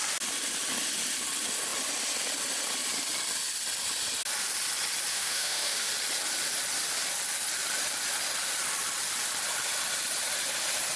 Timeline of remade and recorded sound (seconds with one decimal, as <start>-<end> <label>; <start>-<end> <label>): 0.0-5.1 recorded; 5.1-5.9 remade; 5.9-11.0 recorded

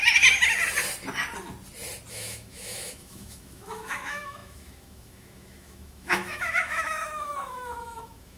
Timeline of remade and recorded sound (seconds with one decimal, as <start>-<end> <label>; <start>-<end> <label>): 0.0-2.1 recorded; 2.1-8.4 remade

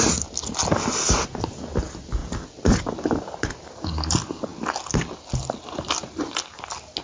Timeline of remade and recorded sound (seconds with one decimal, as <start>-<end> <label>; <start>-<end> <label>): 0.0-7.0 recorded

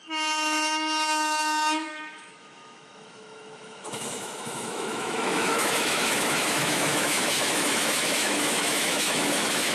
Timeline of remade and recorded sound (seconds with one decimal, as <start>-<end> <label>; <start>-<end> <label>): 0.0-9.7 remade

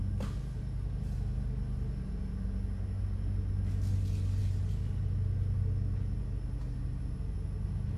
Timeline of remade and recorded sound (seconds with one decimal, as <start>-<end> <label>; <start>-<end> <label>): 0.0-8.0 recorded

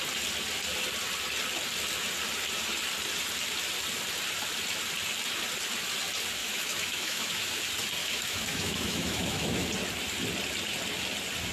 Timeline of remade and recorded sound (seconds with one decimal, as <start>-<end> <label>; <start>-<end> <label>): 0.0-6.4 recorded; 6.4-7.6 remade; 7.6-8.0 recorded; 8.0-9.7 remade; 9.7-11.5 recorded

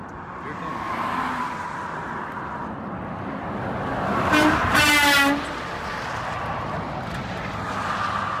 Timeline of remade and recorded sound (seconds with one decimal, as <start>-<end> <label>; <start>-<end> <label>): 0.0-8.4 recorded

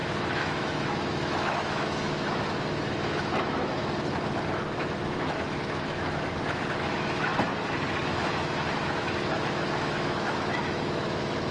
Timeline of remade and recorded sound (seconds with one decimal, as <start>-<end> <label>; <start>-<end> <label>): 0.0-3.8 remade; 3.8-4.6 recorded; 4.6-7.3 remade; 7.3-8.0 recorded; 8.0-11.5 remade